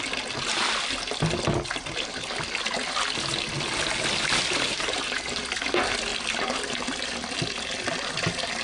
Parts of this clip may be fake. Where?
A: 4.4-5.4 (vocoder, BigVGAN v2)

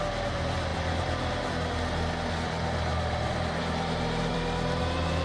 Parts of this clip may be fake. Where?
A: 0.7-1.5 (vocoder, BigVGAN v2); 2.9-3.6; 4.3-4.8

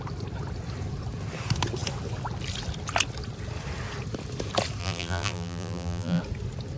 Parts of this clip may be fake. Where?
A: 4.8-6.2 (vocoder, BigVGAN v2)